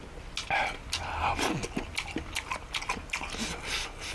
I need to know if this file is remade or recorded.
recorded